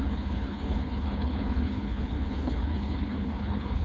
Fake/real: fake